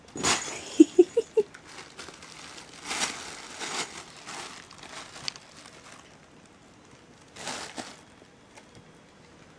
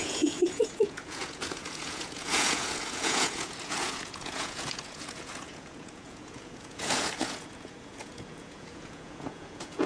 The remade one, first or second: second